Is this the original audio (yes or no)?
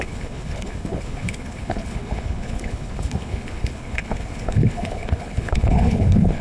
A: no